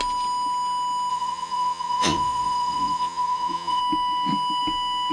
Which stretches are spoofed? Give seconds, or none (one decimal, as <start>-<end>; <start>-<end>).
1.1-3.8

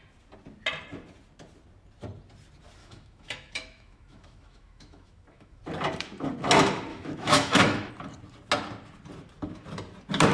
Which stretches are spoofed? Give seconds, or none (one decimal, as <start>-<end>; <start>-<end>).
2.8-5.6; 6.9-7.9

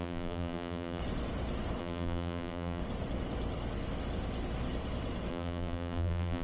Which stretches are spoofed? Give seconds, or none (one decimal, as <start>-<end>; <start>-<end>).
0.0-1.0; 1.8-2.8; 5.3-6.4

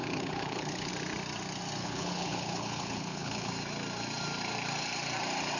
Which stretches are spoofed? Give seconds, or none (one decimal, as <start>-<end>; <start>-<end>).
0.0-0.9; 1.8-3.5

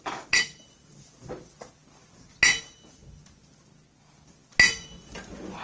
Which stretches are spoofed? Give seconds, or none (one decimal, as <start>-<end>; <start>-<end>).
none

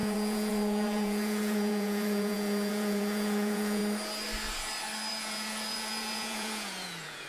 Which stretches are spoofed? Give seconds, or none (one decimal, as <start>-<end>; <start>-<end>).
0.0-3.8; 5.1-7.3

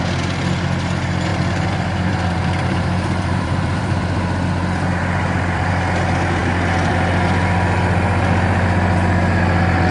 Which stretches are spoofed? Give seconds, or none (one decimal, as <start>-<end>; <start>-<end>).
1.3-5.7

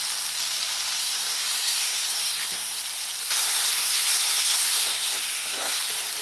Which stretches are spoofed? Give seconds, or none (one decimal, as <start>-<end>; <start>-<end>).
1.0-2.8; 3.2-5.8